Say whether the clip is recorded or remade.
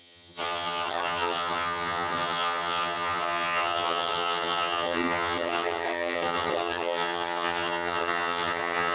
remade